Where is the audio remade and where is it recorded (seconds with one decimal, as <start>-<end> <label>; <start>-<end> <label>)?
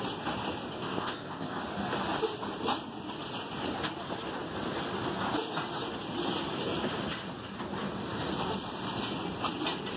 0.0-0.8 recorded; 0.8-1.6 remade; 1.6-10.0 recorded